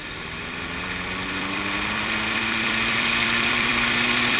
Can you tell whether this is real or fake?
fake